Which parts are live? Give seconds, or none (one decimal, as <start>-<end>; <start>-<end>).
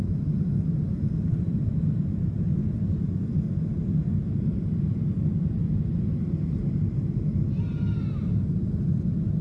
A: 0.0-9.4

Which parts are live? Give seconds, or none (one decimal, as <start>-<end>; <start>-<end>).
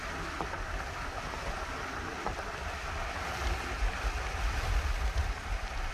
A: 0.0-5.2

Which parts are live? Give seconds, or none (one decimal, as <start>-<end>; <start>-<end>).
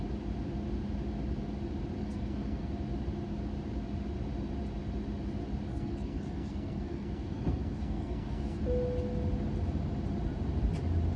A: 0.0-2.0; 2.7-5.7; 8.6-11.2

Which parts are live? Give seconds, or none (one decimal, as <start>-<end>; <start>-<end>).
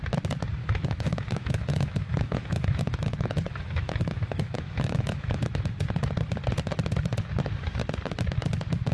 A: 0.0-0.6; 5.4-8.9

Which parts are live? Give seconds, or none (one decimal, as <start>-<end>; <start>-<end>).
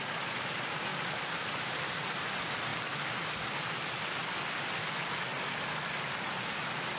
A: 0.0-7.0